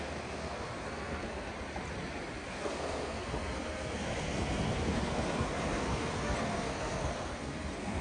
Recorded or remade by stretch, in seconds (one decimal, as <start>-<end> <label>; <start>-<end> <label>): 0.0-1.5 remade; 1.5-2.5 recorded; 2.5-8.0 remade